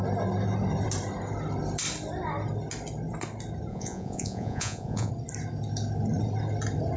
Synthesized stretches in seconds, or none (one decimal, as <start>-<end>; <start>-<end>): 3.7-5.1